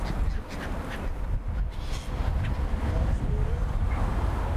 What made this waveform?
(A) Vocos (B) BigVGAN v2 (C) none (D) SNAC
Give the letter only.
C